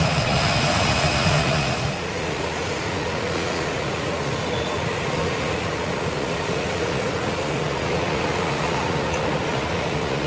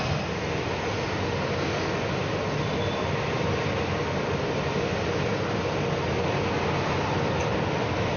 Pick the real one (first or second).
second